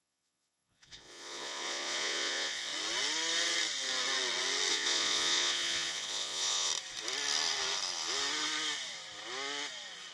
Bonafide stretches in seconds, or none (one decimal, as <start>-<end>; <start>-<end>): 2.7-4.7; 6.7-10.1